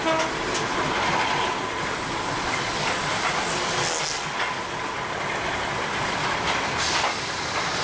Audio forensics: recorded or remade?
recorded